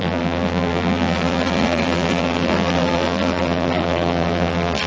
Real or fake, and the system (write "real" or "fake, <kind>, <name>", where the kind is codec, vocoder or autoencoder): fake, vocoder, BigVGAN v2